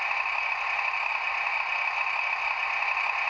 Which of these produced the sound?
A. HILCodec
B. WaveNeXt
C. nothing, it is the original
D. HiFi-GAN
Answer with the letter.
C